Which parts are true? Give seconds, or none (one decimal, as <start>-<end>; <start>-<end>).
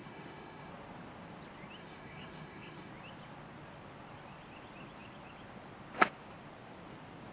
0.7-1.8; 2.9-7.3